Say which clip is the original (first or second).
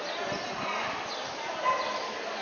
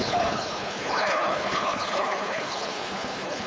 first